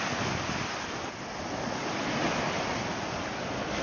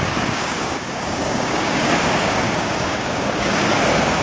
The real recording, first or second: first